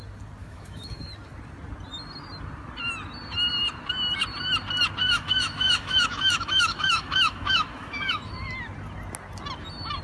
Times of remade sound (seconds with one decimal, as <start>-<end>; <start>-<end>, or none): 0.4-1.1; 5.0-8.3